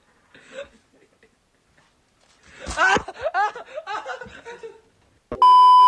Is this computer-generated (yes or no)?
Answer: no